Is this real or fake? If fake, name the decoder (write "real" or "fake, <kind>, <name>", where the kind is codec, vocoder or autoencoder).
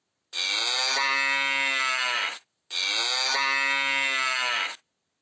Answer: real